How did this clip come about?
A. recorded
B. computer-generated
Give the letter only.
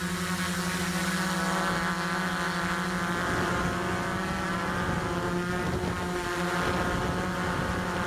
A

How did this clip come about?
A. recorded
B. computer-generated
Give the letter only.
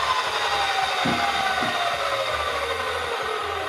A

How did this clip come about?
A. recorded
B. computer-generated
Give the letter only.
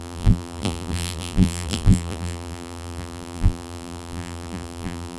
B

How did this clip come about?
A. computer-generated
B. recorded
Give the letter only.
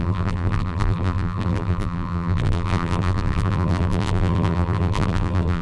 A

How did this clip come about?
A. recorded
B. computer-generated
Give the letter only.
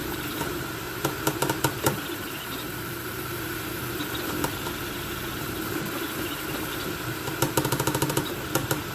B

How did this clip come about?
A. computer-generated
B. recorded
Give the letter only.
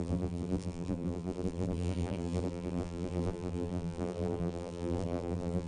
A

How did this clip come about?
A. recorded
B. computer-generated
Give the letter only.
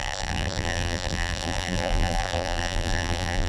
B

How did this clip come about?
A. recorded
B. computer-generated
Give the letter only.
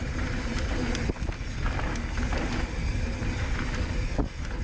A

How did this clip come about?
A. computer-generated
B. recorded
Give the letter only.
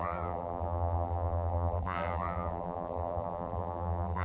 A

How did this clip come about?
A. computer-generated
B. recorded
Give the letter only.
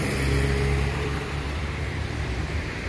A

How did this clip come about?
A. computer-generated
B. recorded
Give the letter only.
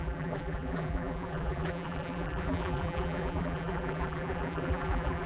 A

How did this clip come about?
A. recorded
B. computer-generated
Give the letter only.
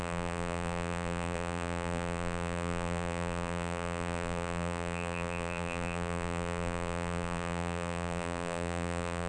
B